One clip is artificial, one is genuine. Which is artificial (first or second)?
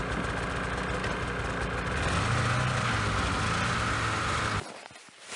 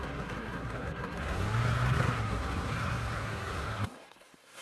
second